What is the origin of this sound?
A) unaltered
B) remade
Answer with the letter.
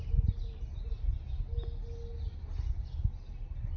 A